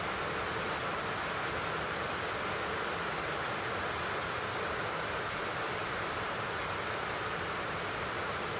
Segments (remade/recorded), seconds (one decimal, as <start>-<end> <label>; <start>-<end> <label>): 0.0-5.8 recorded; 5.8-6.5 remade; 6.5-8.6 recorded